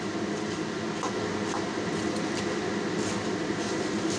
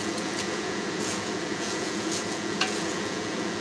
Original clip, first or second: first